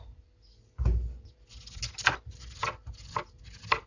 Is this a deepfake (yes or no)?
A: no